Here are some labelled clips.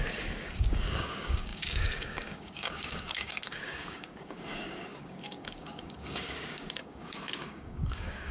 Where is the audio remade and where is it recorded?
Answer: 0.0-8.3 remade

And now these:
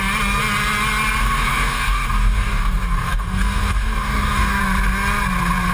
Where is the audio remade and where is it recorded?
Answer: 0.0-1.2 recorded; 1.2-4.6 remade; 4.6-5.7 recorded

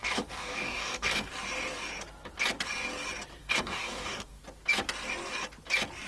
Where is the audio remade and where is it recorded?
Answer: 0.0-1.3 remade; 1.3-3.4 recorded; 3.4-4.4 remade; 4.4-6.1 recorded

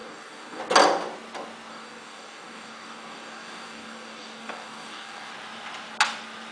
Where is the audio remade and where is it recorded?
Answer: 0.0-0.6 remade; 0.6-1.7 recorded; 1.7-5.3 remade; 5.3-6.5 recorded

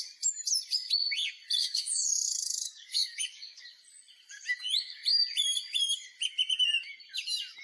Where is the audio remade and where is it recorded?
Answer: 0.0-1.6 recorded; 1.6-3.6 remade; 3.6-7.6 recorded

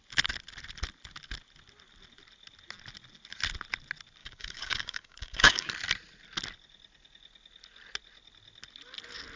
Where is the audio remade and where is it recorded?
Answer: 0.0-4.2 recorded; 4.2-5.7 remade; 5.7-9.4 recorded

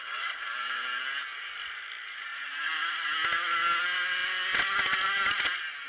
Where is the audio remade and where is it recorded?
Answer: 0.0-5.9 recorded